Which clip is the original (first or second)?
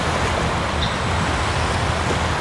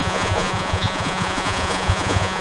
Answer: first